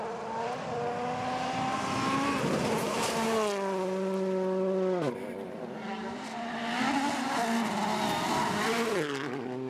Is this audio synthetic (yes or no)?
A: no